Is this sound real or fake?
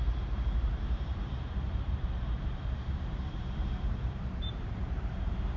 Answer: fake